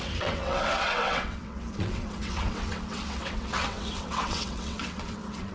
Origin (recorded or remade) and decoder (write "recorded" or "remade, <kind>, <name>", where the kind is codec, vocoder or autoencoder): remade, vocoder, WaveNeXt